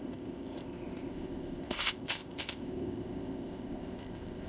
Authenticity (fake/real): fake